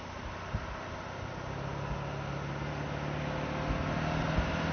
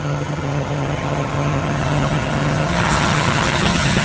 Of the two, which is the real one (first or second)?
first